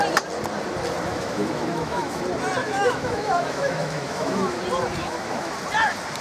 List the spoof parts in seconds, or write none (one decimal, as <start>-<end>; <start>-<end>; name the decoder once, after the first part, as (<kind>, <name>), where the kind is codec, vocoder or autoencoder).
1.1-2.2 (autoencoder, DAC-VAE); 2.6-4.6; 5.0-5.5